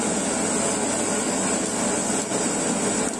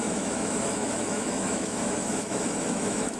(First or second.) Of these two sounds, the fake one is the second